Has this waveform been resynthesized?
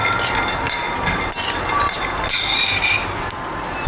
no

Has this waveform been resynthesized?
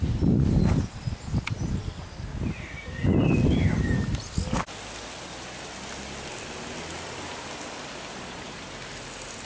no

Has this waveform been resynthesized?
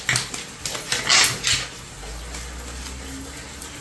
no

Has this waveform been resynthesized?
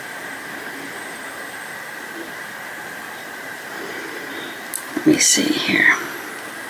no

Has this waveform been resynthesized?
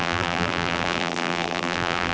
yes